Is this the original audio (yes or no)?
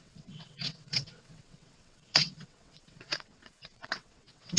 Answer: no